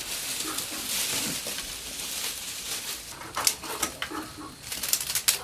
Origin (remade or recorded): recorded